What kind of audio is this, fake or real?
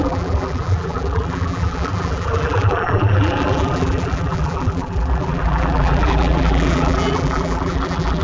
fake